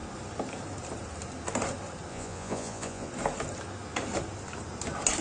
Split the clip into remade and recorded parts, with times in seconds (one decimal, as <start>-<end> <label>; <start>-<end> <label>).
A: 0.0-2.1 recorded; 2.1-3.1 remade; 3.1-5.2 recorded